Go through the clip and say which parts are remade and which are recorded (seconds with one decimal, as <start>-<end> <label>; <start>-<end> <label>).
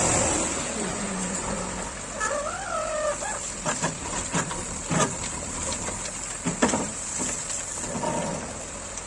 0.0-0.9 recorded; 0.9-1.6 remade; 1.6-9.1 recorded